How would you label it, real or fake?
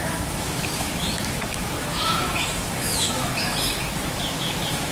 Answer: fake